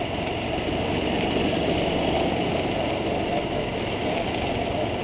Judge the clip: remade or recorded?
recorded